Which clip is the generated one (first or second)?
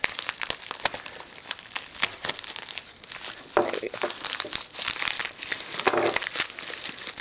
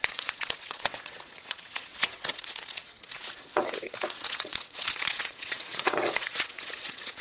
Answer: second